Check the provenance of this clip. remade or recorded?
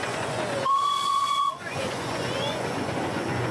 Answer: remade